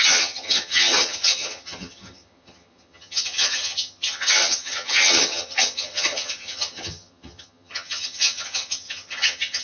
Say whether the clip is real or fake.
fake